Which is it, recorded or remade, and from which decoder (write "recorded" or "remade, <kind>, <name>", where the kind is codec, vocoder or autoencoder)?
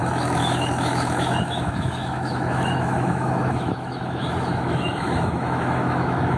remade, autoencoder, DAC-VAE